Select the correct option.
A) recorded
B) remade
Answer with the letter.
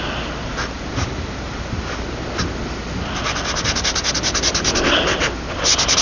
A